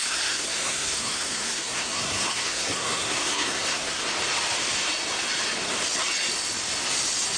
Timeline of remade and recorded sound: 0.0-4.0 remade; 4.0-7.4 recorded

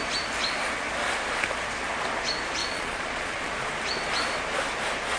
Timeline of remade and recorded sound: 0.0-2.6 recorded; 2.6-3.7 remade; 3.7-5.2 recorded

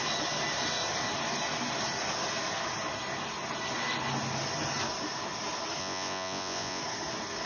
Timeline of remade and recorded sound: 0.0-5.8 recorded; 5.8-6.8 remade; 6.8-7.5 recorded

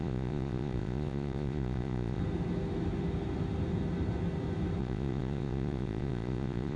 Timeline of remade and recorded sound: 0.0-2.2 remade; 2.2-4.8 recorded; 4.8-6.8 remade

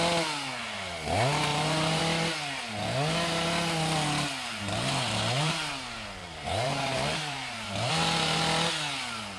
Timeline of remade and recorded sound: 0.0-1.5 recorded; 1.5-2.0 remade; 2.0-4.5 recorded; 4.5-5.7 remade; 5.7-6.2 recorded; 6.2-7.9 remade; 7.9-9.4 recorded

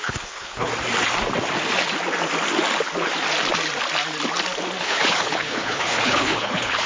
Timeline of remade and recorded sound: 0.0-0.7 remade; 0.7-4.8 recorded; 4.8-6.9 remade

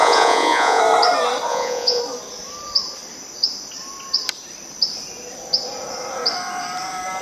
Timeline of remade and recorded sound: 0.0-0.8 remade; 0.8-1.5 recorded; 1.5-2.0 remade; 2.0-7.2 recorded

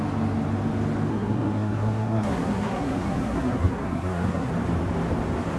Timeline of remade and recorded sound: 0.0-1.1 recorded; 1.1-4.5 remade; 4.5-5.6 recorded